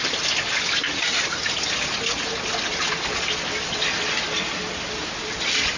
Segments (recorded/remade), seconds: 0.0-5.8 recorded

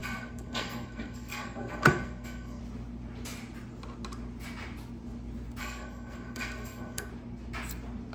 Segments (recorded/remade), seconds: 0.0-2.6 remade; 2.6-5.6 recorded; 5.6-7.1 remade; 7.1-8.1 recorded

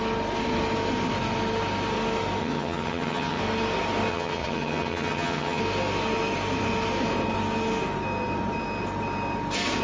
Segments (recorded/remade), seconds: 0.0-2.4 recorded; 2.4-3.4 remade; 3.4-4.1 recorded; 4.1-5.6 remade; 5.6-9.8 recorded

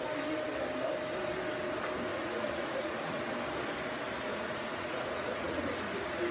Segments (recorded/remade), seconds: 0.0-2.1 recorded; 2.1-3.3 remade; 3.3-4.3 recorded; 4.3-5.6 remade; 5.6-6.3 recorded

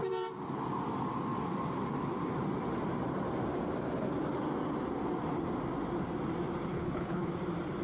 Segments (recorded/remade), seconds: 0.0-6.7 recorded; 6.7-7.3 remade; 7.3-7.8 recorded

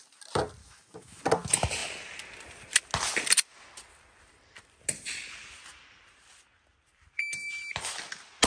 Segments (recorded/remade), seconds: 0.0-0.6 recorded; 0.6-1.2 remade; 1.2-8.5 recorded

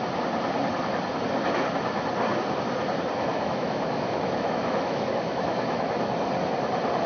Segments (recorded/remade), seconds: 0.0-3.3 recorded; 3.3-6.1 remade; 6.1-7.1 recorded